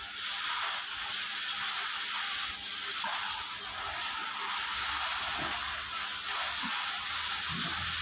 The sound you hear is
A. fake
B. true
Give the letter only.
B